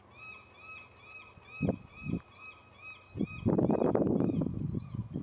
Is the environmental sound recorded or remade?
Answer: recorded